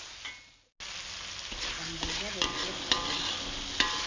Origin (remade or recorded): recorded